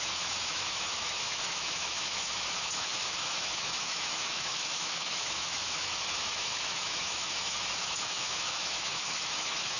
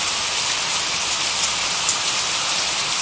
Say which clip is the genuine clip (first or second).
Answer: second